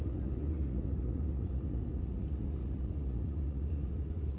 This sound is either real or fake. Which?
fake